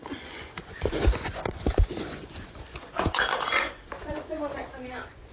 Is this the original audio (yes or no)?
no